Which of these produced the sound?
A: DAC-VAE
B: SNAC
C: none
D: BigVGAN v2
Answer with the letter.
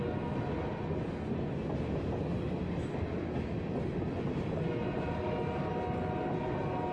C